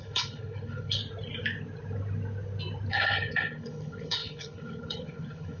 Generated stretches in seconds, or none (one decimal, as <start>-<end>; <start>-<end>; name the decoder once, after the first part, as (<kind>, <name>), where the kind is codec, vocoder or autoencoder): 0.0-1.0 (codec, HILCodec); 2.9-5.6

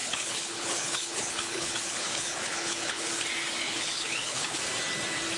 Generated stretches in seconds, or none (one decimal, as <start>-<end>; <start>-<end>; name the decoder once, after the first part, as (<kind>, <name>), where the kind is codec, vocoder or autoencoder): 0.0-3.1 (codec, HILCodec); 3.6-4.6

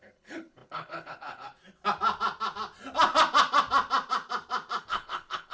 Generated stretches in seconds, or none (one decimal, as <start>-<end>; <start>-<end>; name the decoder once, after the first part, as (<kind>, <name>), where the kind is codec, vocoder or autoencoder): 0.0-1.5 (codec, HILCodec); 4.8-5.5

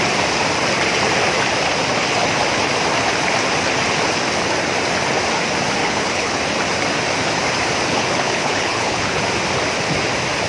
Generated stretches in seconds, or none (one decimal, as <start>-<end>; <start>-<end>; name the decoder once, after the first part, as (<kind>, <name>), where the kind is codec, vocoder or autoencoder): 5.8-6.4 (codec, HILCodec); 7.9-9.2

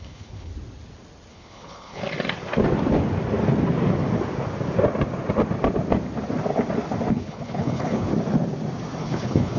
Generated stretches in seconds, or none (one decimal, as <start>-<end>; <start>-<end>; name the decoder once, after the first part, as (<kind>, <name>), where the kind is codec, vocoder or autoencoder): 0.0-0.5 (codec, HILCodec); 1.3-2.0; 7.1-8.1; 9.0-9.6

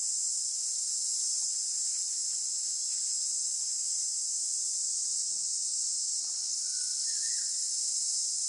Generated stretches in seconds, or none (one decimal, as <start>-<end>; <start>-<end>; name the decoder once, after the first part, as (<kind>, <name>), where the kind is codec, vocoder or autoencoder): 6.4-7.3 (codec, HILCodec)